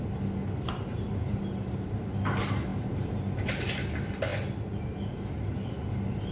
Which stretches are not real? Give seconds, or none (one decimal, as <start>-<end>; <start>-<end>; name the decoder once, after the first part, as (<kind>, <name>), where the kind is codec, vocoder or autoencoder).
0.9-1.4 (vocoder, BigVGAN v2); 2.7-3.5